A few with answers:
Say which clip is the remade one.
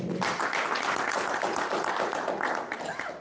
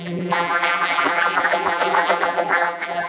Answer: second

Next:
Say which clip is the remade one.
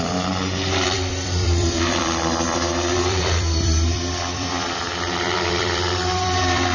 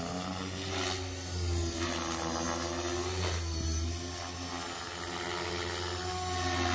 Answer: first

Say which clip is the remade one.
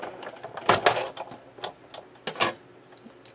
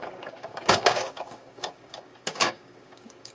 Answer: second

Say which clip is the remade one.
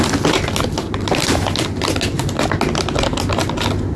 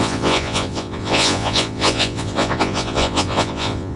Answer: second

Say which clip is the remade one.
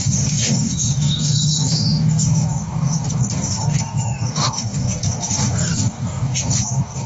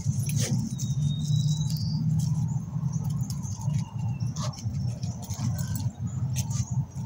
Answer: first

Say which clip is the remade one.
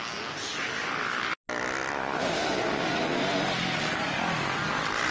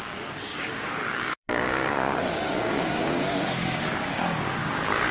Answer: second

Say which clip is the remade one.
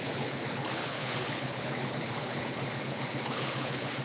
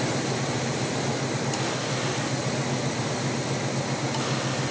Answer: first